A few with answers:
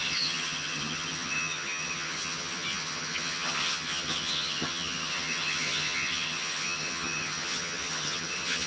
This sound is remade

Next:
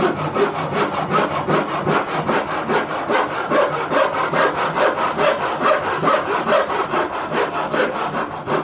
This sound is recorded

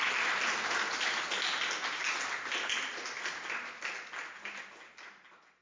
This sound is recorded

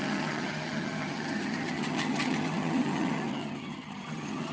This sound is remade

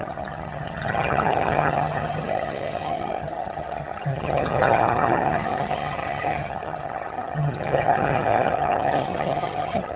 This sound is remade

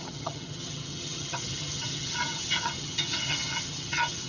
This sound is remade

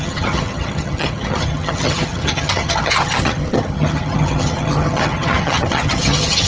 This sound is remade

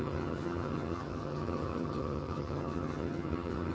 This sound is remade